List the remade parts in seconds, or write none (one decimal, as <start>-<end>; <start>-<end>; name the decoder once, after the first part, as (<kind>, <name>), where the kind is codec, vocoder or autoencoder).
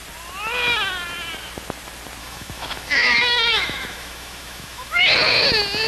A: 2.2-5.0 (autoencoder, DAC-VAE)